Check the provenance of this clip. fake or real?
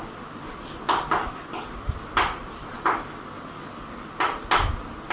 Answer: real